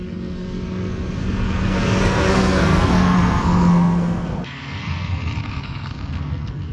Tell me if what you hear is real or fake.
fake